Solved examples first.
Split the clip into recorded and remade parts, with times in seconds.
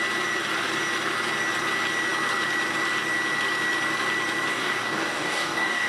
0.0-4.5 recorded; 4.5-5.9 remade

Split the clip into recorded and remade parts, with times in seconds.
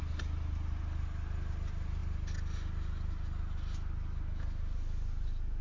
0.0-5.6 recorded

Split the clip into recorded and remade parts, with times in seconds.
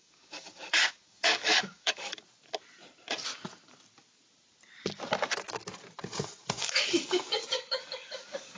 0.0-2.1 remade; 2.1-6.6 recorded; 6.6-8.6 remade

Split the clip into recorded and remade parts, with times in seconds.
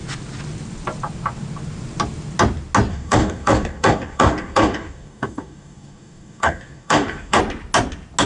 0.0-2.9 recorded; 2.9-7.4 remade; 7.4-8.3 recorded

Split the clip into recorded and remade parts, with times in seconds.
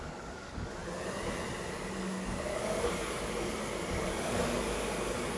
0.0-0.8 remade; 0.8-1.7 recorded; 1.7-5.4 remade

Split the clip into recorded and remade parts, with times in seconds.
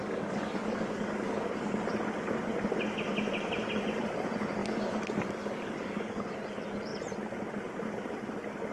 0.0-1.7 remade; 1.7-4.6 recorded; 4.6-6.4 remade; 6.4-8.7 recorded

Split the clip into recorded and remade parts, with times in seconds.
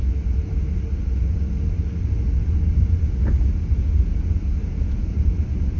0.0-5.8 recorded